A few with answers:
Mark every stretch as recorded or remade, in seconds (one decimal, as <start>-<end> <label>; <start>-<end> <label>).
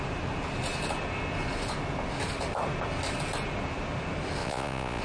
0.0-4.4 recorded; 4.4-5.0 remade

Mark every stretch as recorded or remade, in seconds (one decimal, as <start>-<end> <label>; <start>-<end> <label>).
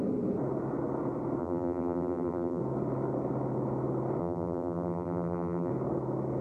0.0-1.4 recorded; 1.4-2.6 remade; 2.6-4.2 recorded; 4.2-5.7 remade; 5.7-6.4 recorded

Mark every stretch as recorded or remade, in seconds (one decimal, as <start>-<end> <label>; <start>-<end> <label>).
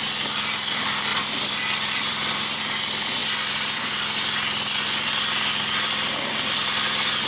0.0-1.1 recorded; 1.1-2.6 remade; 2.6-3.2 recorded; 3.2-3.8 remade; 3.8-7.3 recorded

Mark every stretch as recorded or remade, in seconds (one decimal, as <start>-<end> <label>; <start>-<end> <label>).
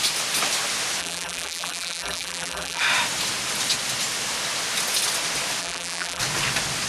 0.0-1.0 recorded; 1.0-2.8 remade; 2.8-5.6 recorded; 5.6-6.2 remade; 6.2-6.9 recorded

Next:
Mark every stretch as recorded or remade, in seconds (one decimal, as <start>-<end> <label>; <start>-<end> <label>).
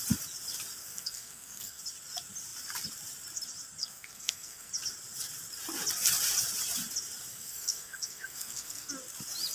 0.0-0.8 recorded; 0.8-1.8 remade; 1.8-3.8 recorded; 3.8-4.7 remade; 4.7-7.3 recorded; 7.3-8.9 remade; 8.9-9.5 recorded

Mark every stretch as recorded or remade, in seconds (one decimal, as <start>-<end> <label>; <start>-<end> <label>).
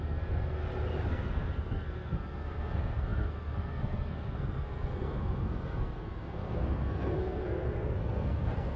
0.0-0.6 remade; 0.6-1.1 recorded; 1.1-8.8 remade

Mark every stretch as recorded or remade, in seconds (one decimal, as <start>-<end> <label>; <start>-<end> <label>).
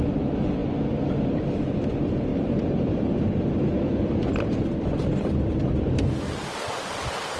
0.0-0.6 recorded; 0.6-1.4 remade; 1.4-2.3 recorded; 2.3-6.7 remade; 6.7-7.4 recorded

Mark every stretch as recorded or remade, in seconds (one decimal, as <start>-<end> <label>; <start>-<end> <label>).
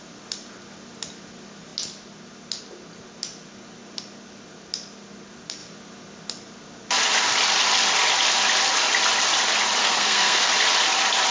0.0-9.8 recorded; 9.8-10.5 remade; 10.5-11.3 recorded